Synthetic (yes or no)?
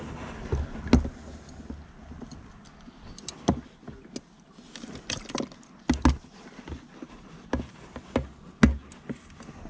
no